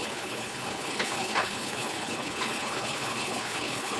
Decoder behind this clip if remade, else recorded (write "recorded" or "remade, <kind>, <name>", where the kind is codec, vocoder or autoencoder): remade, codec, HILCodec